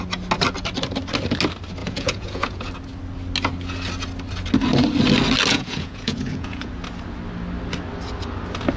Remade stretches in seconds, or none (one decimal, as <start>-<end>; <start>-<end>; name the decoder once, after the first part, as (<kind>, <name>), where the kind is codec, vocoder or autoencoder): 1.8-2.7 (vocoder, Vocos); 5.5-6.7